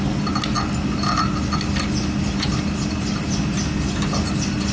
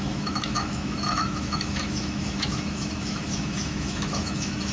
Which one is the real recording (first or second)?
first